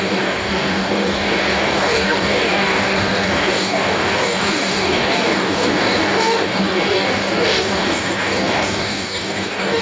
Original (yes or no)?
no